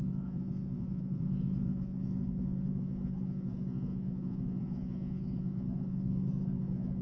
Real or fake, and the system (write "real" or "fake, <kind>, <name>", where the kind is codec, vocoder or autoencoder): fake, vocoder, Vocos